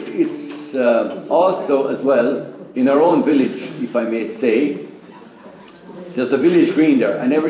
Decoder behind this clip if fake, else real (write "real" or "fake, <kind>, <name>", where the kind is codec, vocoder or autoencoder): fake, vocoder, BigVGAN v2